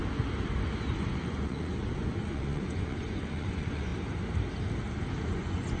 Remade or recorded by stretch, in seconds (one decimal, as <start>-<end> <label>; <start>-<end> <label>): 0.0-0.9 recorded; 0.9-3.9 remade; 3.9-5.2 recorded; 5.2-5.8 remade